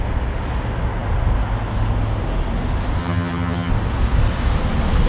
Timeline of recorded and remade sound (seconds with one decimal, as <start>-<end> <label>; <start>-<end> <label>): 0.0-3.0 recorded; 3.0-3.7 remade; 3.7-5.1 recorded